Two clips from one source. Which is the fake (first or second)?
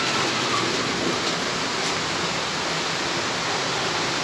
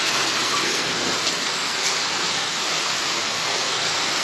second